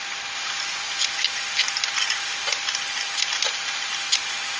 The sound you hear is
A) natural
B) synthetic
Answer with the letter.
A